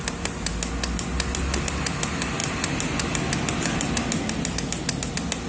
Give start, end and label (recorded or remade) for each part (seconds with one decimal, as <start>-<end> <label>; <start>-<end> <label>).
0.0-5.5 recorded